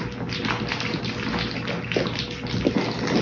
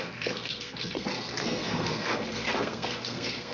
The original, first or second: first